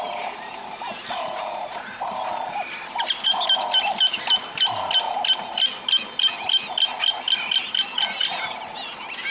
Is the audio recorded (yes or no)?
yes